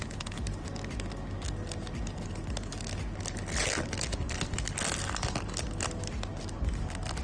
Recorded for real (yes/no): yes